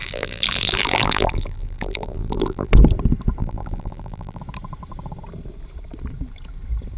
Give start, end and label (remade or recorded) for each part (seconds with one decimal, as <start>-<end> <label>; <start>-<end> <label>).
0.0-2.7 remade; 2.7-3.4 recorded; 3.4-4.4 remade; 4.4-7.0 recorded